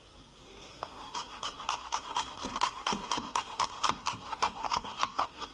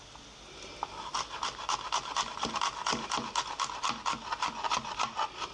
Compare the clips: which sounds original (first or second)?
second